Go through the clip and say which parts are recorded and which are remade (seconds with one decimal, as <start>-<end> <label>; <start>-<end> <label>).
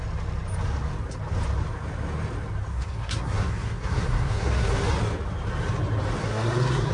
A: 0.0-2.7 recorded; 2.7-4.9 remade; 4.9-6.2 recorded; 6.2-6.9 remade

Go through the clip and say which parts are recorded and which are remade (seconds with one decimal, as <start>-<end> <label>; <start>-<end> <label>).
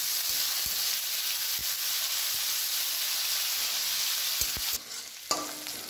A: 0.0-5.9 recorded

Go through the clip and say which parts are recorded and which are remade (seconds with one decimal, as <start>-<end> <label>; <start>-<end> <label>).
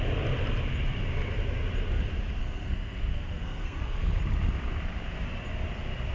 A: 0.0-2.4 recorded; 2.4-4.2 remade; 4.2-6.1 recorded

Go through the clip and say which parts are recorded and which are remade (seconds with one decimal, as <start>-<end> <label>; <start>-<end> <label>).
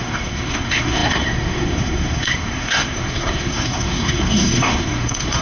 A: 0.0-5.4 remade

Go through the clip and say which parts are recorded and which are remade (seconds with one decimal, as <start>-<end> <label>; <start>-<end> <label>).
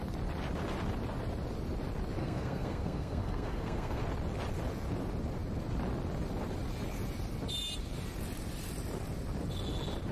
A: 0.0-2.2 recorded; 2.2-4.0 remade; 4.0-10.1 recorded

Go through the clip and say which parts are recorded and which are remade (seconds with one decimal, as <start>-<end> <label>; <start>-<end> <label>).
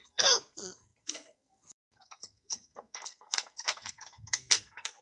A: 0.0-5.0 remade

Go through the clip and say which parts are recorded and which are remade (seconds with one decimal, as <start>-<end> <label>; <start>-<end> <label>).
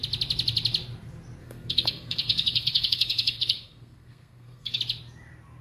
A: 0.0-1.4 recorded; 1.4-4.8 remade; 4.8-5.6 recorded